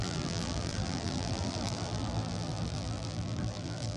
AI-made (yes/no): yes